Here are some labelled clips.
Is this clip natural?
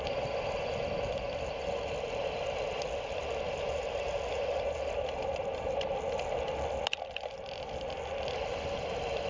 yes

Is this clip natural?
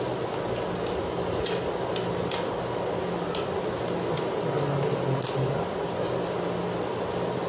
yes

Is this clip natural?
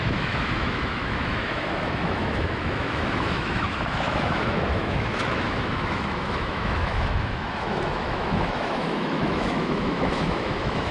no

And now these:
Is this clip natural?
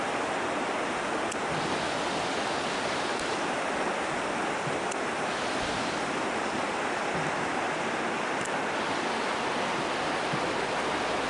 yes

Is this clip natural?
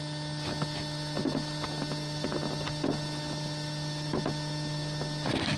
yes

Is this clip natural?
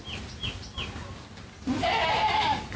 yes